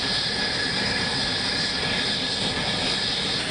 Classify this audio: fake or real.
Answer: real